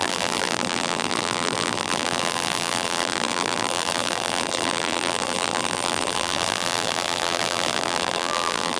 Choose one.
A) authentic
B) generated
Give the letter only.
B